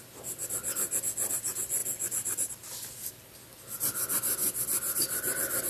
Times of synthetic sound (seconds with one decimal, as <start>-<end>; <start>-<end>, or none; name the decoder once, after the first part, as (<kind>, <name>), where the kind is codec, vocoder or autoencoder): none